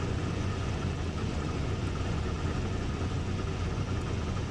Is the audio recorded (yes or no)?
no